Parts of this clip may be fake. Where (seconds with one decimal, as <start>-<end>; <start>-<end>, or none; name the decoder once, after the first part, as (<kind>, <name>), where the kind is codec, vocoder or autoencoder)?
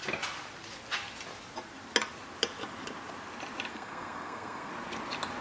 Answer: 3.7-4.7 (codec, SNAC)